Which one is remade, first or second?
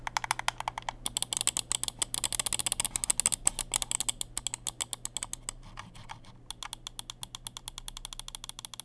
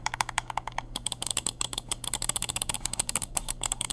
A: second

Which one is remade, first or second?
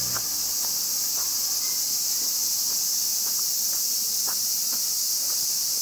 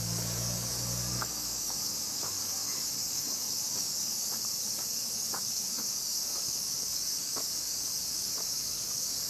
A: second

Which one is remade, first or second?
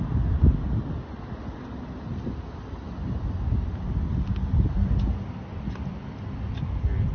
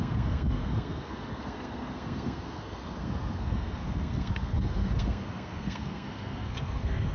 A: second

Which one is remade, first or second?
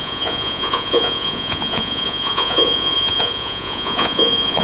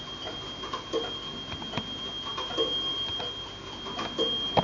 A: first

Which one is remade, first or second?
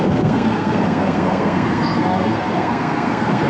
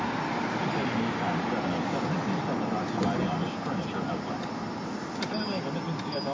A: first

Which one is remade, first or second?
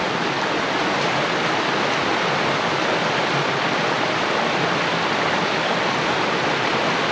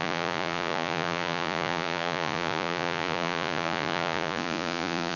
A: second